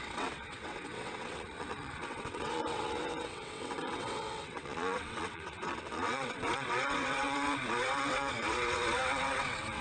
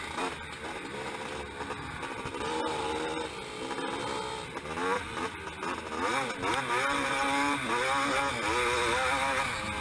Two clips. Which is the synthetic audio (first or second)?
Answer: first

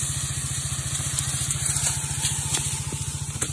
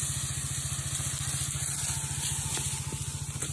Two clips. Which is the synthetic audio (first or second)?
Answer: first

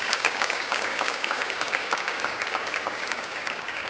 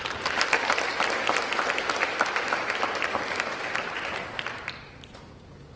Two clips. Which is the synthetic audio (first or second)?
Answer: first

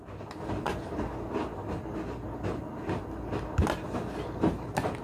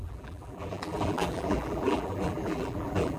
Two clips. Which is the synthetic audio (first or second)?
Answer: second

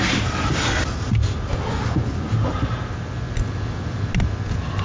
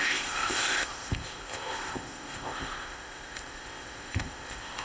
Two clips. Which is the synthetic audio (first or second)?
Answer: second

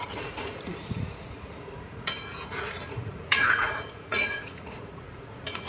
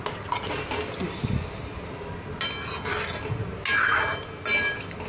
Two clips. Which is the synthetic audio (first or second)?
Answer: first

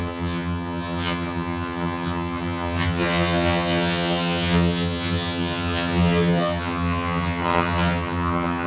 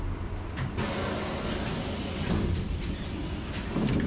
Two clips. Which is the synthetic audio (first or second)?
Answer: first